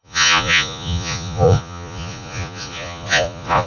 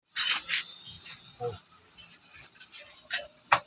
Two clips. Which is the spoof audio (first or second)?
first